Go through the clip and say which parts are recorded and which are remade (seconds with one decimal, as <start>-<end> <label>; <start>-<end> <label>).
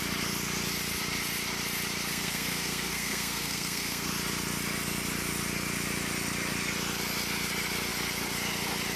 0.0-2.1 recorded; 2.1-4.1 remade; 4.1-9.0 recorded